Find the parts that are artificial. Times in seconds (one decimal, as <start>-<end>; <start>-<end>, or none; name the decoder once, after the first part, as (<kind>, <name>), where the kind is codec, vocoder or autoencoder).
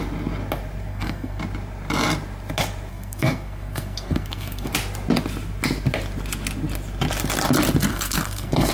0.9-1.4 (codec, SNAC); 2.9-4.7; 7.9-8.7